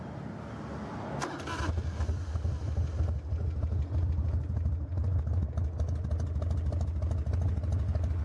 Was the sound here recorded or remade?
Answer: recorded